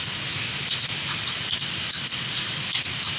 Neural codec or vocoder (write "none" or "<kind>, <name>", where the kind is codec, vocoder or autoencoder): none